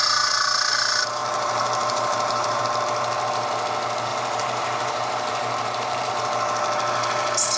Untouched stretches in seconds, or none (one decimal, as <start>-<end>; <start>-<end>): 0.0-1.2; 2.6-4.1; 6.1-7.6

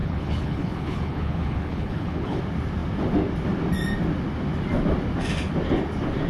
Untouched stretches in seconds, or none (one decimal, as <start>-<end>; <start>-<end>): 2.4-6.3

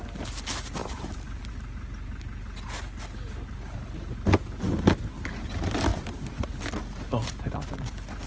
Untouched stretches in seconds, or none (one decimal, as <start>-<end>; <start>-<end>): 0.0-0.8; 1.5-5.9; 6.6-8.3

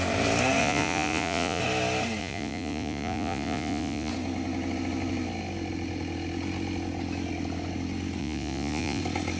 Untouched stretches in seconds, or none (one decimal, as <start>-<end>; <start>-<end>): 0.0-0.6; 1.6-2.2; 4.1-8.2; 9.0-9.4

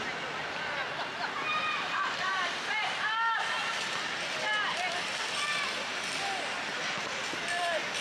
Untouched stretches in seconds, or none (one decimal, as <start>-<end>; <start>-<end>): 0.0-8.0